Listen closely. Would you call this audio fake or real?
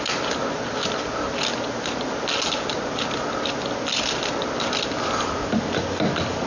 real